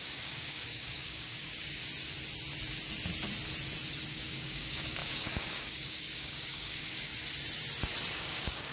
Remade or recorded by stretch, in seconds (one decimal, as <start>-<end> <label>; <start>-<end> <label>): 0.0-1.8 remade; 1.8-4.1 recorded; 4.1-7.1 remade; 7.1-8.1 recorded; 8.1-8.7 remade